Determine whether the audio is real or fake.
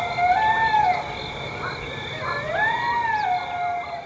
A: real